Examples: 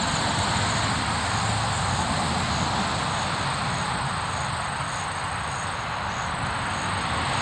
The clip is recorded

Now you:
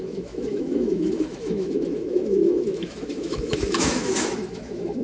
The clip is remade